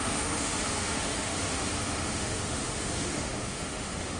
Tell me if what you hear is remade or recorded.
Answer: remade